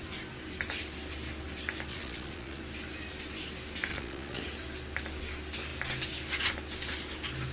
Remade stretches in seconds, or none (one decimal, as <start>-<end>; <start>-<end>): 1.9-2.6; 3.9-4.4